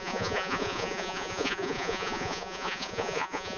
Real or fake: fake